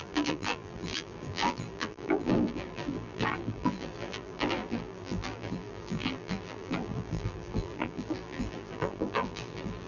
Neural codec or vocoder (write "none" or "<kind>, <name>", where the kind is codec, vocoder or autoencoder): vocoder, BigVGAN v2